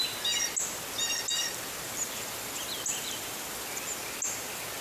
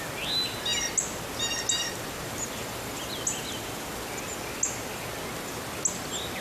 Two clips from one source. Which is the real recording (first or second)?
second